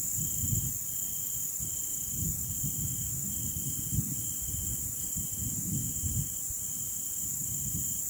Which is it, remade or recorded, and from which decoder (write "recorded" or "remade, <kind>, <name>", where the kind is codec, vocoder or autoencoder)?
recorded